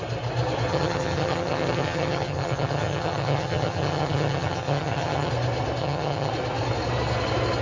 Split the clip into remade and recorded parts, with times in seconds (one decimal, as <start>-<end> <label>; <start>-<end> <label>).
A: 0.0-0.7 recorded; 0.7-5.3 remade; 5.3-5.8 recorded; 5.8-6.3 remade; 6.3-7.6 recorded